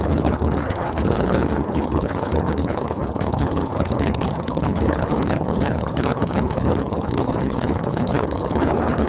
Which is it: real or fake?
fake